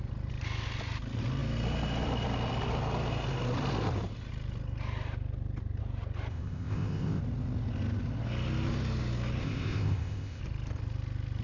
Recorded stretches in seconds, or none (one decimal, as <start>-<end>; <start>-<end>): 0.0-6.3; 7.2-9.4; 10.4-11.4